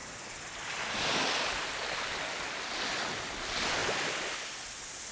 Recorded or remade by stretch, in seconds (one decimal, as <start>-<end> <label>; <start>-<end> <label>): 0.0-5.1 recorded